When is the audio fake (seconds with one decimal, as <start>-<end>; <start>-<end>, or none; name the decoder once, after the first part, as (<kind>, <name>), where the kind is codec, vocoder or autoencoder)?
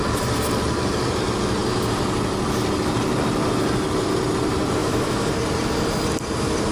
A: 4.8-5.3 (autoencoder, DAC-VAE)